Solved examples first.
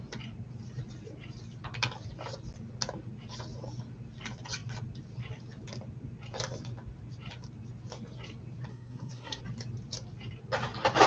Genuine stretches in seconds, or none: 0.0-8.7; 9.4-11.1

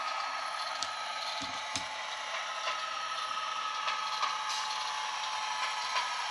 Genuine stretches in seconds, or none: 4.0-5.6

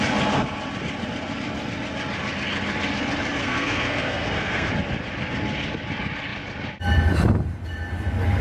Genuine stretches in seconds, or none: 0.0-3.4; 4.7-8.4

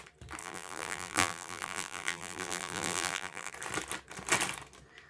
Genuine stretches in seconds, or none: 0.0-0.4; 3.5-5.1

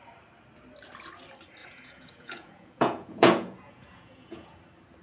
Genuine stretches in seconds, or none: 0.0-1.6; 4.6-5.0

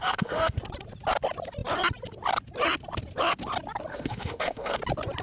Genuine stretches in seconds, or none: 0.6-3.9; 4.8-5.2

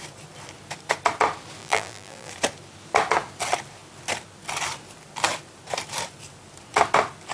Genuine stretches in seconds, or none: 0.0-1.6; 2.3-7.3

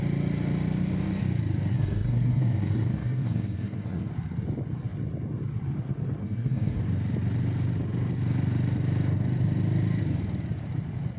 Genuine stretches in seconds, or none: 0.0-1.7; 4.1-6.2; 6.8-11.2